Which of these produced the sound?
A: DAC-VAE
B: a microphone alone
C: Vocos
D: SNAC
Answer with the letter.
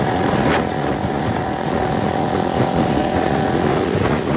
C